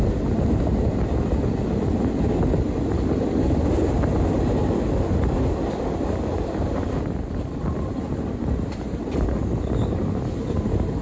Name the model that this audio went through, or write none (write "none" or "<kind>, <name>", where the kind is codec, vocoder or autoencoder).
none